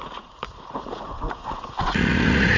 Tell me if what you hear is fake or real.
fake